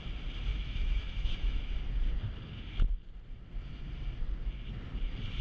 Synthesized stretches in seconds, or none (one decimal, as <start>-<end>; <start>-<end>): 0.5-1.6